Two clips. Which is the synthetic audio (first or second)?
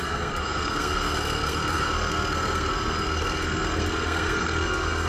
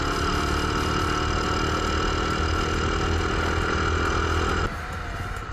first